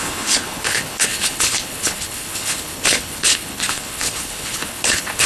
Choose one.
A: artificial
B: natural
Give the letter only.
A